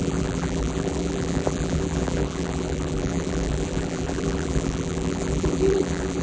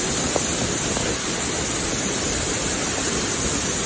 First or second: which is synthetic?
first